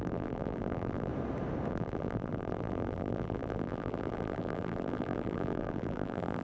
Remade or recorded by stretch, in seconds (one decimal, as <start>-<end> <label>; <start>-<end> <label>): 0.0-1.1 remade; 1.1-1.7 recorded; 1.7-6.4 remade